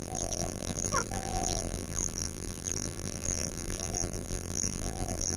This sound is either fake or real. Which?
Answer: fake